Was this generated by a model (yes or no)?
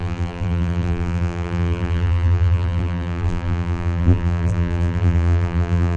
yes